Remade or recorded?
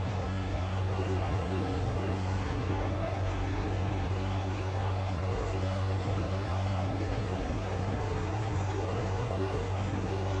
remade